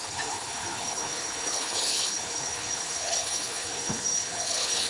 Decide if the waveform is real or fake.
fake